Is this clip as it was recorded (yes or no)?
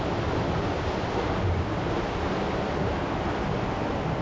yes